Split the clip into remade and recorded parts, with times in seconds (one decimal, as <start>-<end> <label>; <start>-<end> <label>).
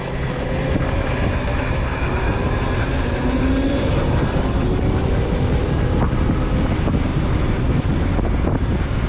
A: 0.0-9.1 recorded